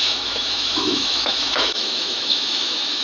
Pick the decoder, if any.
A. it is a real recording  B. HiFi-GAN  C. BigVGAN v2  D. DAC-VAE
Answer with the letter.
D